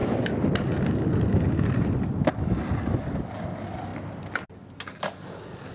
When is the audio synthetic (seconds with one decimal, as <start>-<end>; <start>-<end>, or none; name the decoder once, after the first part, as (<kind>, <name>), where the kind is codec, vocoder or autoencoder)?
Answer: none